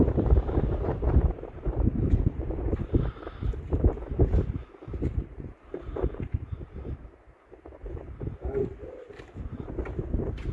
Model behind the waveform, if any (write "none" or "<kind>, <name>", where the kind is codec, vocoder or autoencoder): vocoder, BigVGAN v2